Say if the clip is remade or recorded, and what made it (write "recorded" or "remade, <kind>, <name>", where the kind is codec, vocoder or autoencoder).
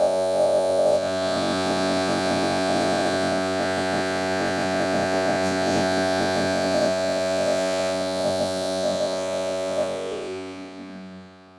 remade, vocoder, Vocos